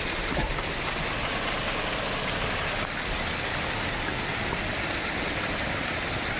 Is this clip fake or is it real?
real